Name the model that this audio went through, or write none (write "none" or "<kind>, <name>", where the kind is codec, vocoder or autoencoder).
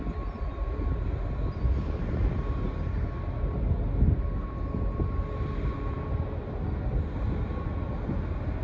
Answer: none